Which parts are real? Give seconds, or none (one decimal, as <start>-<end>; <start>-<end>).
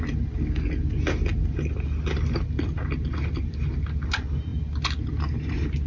0.0-5.9